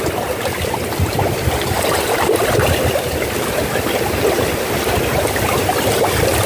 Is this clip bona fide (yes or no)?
yes